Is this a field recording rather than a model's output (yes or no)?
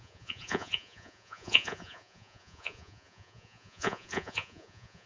no